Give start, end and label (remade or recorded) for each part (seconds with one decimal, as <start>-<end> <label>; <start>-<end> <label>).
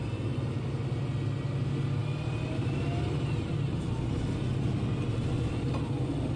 0.0-6.4 recorded